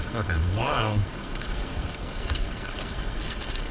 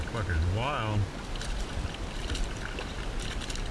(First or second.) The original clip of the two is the second